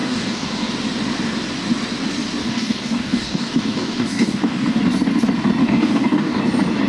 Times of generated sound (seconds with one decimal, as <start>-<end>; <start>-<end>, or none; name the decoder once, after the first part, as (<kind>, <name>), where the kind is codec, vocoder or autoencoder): 0.0-0.7 (codec, DAC); 2.4-4.8; 5.6-6.4